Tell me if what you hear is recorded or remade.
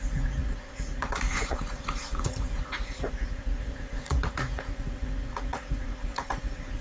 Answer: remade